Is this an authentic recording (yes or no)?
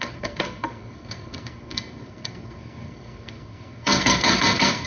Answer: no